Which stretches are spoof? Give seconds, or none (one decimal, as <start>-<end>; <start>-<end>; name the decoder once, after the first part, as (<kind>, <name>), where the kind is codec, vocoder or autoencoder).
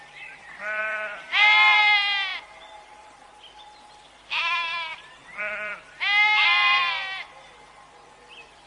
0.0-8.7 (vocoder, BigVGAN v2)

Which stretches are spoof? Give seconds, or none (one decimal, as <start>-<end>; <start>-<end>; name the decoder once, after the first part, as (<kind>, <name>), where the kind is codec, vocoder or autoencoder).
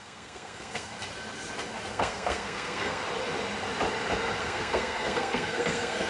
0.0-0.9 (codec, SNAC); 1.9-3.0; 4.4-6.1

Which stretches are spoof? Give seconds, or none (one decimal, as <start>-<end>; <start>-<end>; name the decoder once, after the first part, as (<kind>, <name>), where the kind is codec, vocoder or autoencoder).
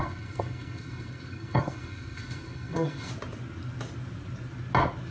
0.0-3.1 (codec, SNAC)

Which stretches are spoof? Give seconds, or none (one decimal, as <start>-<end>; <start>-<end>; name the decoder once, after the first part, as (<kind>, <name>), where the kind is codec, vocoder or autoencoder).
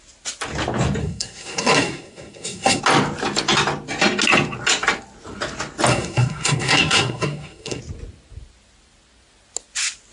1.0-2.8 (codec, SNAC); 5.9-7.8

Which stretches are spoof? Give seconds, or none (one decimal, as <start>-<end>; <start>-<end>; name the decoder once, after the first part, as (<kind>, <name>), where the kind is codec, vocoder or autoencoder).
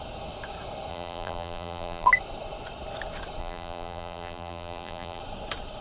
0.9-2.1 (vocoder, BigVGAN v2); 3.4-5.2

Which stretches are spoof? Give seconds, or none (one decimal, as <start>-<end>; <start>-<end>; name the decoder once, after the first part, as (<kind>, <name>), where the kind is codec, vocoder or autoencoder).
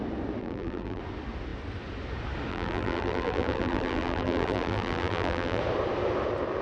0.4-1.0 (vocoder, BigVGAN v2); 2.5-5.6